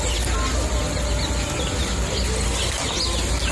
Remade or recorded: recorded